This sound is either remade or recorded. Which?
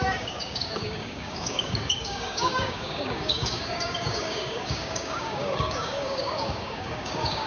remade